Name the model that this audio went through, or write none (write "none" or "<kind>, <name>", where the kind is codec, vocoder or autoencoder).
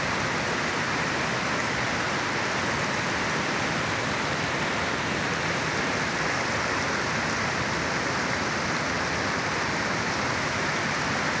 none